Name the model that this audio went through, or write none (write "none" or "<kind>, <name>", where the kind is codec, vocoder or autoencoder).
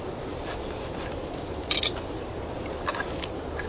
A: vocoder, BigVGAN v2